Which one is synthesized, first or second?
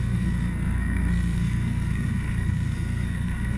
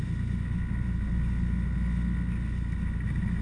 first